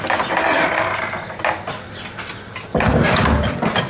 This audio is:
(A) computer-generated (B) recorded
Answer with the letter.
B